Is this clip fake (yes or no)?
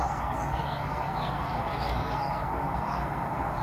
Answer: yes